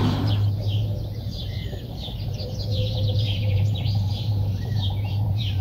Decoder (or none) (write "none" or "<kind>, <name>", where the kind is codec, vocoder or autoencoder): vocoder, BigVGAN v2